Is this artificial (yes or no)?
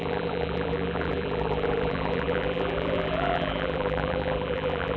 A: yes